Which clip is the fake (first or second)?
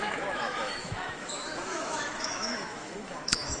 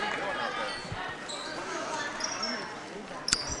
first